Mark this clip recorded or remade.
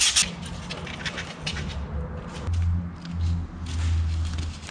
recorded